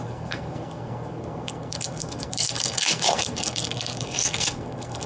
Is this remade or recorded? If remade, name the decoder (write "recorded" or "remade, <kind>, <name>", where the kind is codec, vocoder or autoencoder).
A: remade, codec, SNAC